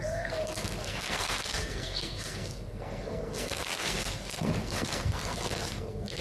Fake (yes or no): yes